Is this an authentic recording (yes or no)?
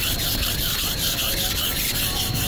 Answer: no